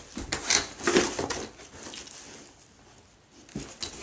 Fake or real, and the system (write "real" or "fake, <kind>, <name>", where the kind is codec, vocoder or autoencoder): real